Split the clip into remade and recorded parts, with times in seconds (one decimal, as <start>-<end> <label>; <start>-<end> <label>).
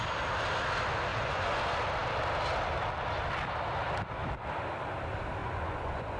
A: 0.0-1.1 recorded; 1.1-1.6 remade; 1.6-5.4 recorded; 5.4-6.2 remade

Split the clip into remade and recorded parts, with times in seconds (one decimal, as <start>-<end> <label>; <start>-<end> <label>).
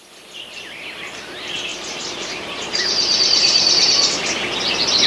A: 0.0-1.7 recorded; 1.7-3.9 remade; 3.9-5.1 recorded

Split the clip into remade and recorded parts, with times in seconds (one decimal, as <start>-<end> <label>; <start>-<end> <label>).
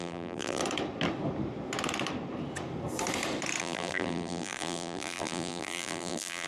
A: 0.0-0.6 remade; 0.6-3.6 recorded; 3.6-6.5 remade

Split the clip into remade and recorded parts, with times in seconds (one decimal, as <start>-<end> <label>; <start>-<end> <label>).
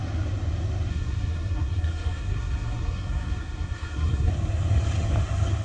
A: 0.0-0.9 recorded; 0.9-4.3 remade; 4.3-5.6 recorded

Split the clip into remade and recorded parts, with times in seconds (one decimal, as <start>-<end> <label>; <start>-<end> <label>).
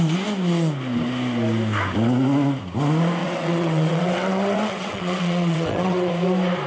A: 0.0-3.2 recorded; 3.2-6.1 remade; 6.1-6.7 recorded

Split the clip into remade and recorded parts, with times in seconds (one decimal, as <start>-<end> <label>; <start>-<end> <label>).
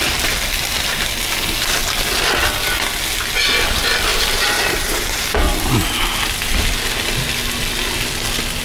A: 0.0-4.1 recorded; 4.1-5.7 remade; 5.7-8.6 recorded